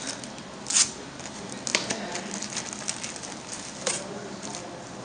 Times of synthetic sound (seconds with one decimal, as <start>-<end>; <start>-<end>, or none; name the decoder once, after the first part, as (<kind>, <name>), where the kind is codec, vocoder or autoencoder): none